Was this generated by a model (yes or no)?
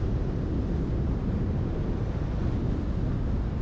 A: no